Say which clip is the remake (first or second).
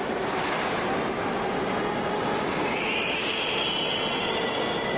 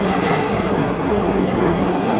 second